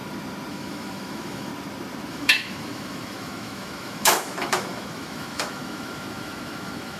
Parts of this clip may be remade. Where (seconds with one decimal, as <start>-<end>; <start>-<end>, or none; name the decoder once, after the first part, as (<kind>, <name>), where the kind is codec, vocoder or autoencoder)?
0.5-1.5 (autoencoder, DAC-VAE); 2.1-7.0